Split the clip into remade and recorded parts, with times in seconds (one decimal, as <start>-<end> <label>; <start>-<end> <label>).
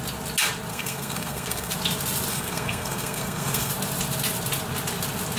0.0-0.7 recorded; 0.7-1.7 remade; 1.7-2.3 recorded; 2.3-3.7 remade; 3.7-5.4 recorded